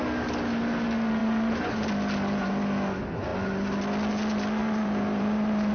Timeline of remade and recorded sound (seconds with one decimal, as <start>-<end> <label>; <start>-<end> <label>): 0.0-1.2 recorded; 1.2-1.9 remade; 1.9-4.6 recorded; 4.6-5.7 remade